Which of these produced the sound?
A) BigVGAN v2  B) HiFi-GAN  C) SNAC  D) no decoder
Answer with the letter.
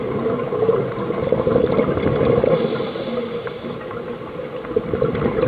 D